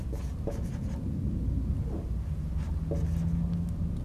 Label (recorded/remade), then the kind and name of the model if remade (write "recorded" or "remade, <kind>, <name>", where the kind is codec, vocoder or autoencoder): recorded